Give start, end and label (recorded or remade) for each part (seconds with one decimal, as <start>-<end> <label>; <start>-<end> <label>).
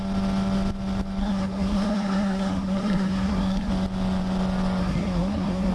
0.0-1.2 recorded; 1.2-3.7 remade; 3.7-4.8 recorded; 4.8-5.7 remade